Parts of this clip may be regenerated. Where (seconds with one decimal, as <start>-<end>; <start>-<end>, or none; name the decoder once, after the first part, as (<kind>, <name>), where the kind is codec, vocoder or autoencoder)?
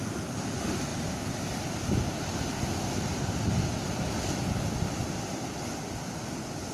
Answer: none